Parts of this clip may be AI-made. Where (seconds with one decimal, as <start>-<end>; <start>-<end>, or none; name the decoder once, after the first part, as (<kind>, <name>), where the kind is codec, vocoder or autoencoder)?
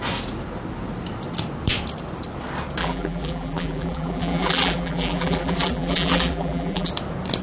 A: 2.8-6.9 (vocoder, BigVGAN v2)